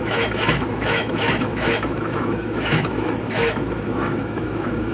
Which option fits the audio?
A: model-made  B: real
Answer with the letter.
A